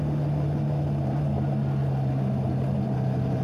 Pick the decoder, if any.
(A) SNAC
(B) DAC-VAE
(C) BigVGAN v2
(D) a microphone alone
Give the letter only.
D